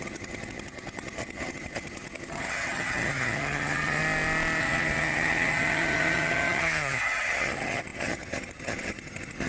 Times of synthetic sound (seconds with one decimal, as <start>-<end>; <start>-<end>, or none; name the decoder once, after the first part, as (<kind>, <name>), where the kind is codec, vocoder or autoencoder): 0.0-4.0 (vocoder, HiFi-GAN); 4.6-9.5